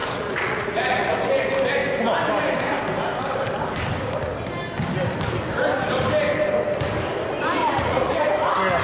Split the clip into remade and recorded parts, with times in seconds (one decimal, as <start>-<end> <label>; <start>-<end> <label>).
0.0-1.1 remade; 1.1-7.6 recorded; 7.6-8.2 remade; 8.2-8.8 recorded